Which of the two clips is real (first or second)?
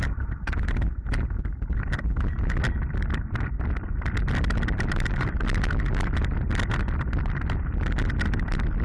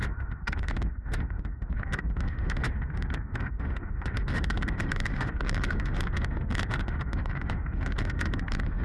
first